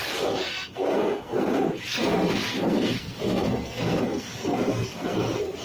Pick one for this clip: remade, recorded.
remade